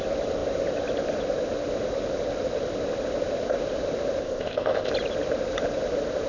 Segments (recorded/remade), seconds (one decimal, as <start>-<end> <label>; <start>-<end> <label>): 0.0-4.2 recorded; 4.2-4.9 remade; 4.9-6.3 recorded